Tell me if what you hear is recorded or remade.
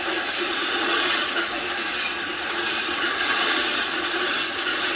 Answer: remade